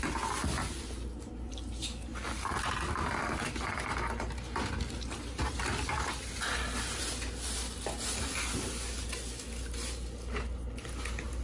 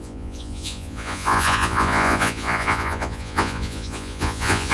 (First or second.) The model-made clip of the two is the second